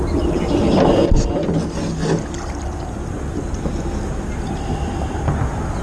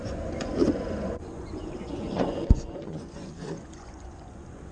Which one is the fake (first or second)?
second